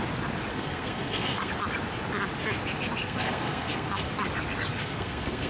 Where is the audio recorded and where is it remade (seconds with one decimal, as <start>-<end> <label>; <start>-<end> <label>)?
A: 0.0-0.5 recorded; 0.5-1.5 remade; 1.5-3.0 recorded; 3.0-4.1 remade; 4.1-4.7 recorded; 4.7-5.5 remade